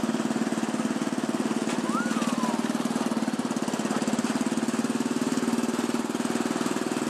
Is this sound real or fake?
real